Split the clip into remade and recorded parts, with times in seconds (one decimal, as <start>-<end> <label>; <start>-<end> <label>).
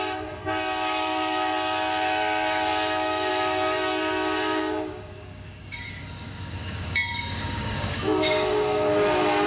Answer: 0.0-9.5 remade